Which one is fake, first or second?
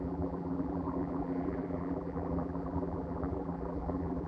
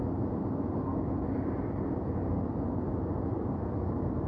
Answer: first